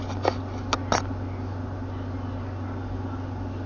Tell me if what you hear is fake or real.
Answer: real